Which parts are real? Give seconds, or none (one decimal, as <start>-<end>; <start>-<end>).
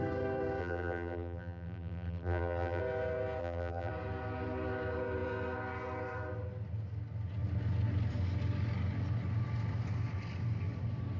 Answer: 0.0-0.6; 2.8-3.4; 3.9-11.2